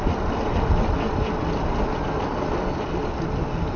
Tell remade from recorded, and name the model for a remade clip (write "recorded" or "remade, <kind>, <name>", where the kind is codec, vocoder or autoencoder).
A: recorded